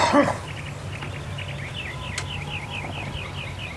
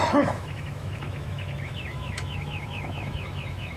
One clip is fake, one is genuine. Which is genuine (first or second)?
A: first